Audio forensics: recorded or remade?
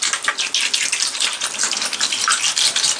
recorded